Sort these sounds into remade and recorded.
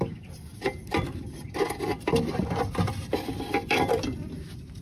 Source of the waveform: remade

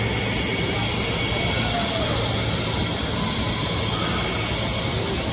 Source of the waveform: recorded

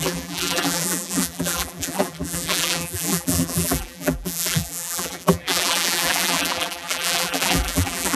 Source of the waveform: remade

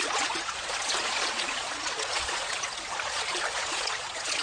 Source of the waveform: remade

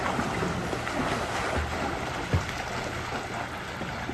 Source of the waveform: recorded